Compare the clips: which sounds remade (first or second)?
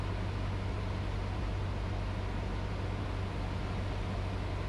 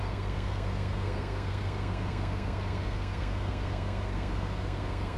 second